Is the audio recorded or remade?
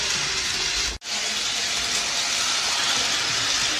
recorded